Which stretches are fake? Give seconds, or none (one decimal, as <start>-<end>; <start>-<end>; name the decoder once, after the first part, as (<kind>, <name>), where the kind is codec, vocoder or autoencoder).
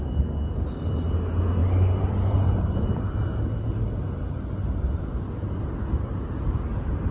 1.6-3.2 (vocoder, BigVGAN v2)